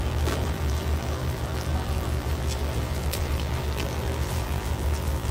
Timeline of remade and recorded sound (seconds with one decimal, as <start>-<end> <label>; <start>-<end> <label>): 0.0-5.3 remade